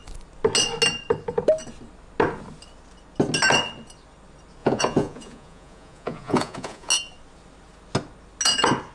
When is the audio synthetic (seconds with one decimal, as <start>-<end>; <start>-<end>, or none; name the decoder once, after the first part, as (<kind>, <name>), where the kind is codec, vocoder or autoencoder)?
4.6-6.9 (vocoder, Vocos)